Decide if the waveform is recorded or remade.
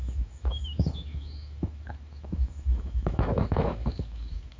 remade